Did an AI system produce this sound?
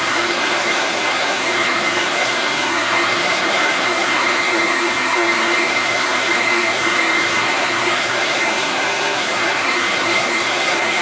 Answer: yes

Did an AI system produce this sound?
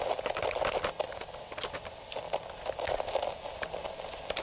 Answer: yes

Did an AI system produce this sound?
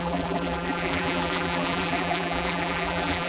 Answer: yes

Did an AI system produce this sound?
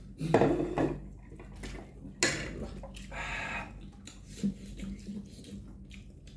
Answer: no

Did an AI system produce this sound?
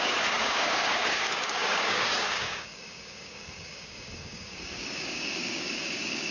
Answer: yes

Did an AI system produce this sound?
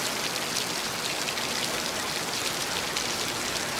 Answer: no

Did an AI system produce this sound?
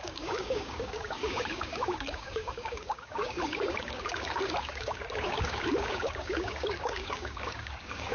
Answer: yes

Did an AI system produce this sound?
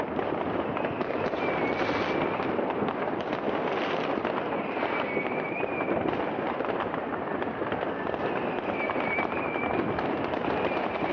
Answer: no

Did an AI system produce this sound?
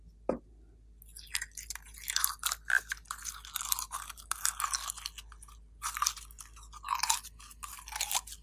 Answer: no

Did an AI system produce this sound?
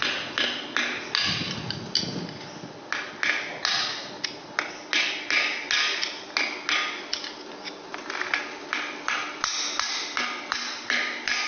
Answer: no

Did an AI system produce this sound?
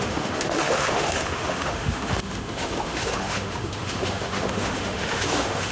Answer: yes